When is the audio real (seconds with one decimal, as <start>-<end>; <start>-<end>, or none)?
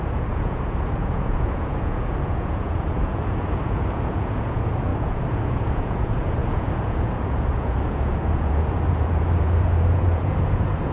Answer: none